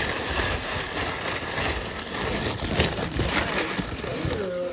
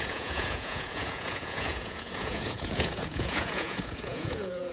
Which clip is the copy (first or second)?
second